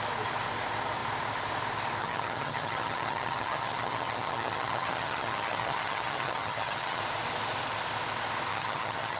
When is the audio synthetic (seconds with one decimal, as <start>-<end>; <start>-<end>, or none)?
2.0-7.0; 8.5-9.2